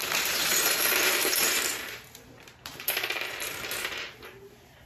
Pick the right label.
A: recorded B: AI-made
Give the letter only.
B